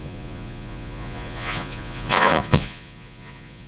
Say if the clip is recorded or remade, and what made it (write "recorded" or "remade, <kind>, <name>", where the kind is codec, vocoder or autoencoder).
remade, vocoder, Vocos